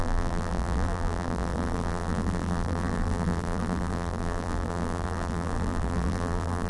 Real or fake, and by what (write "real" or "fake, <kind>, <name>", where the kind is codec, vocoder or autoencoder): fake, vocoder, BigVGAN v2